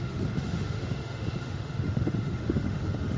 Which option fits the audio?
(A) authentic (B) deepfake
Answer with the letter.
B